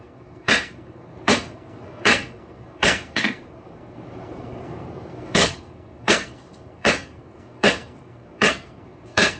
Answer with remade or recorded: remade